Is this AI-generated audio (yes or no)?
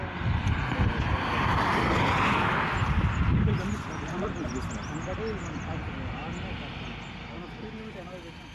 no